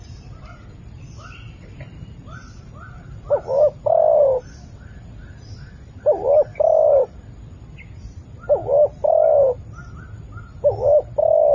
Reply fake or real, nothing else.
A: real